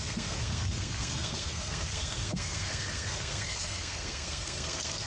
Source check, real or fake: fake